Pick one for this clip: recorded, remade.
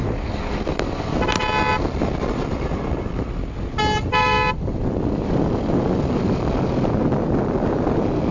recorded